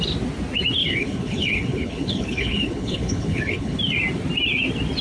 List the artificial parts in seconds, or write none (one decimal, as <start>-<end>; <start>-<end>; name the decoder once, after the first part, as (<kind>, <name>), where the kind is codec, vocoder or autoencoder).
0.8-3.8 (codec, HILCodec)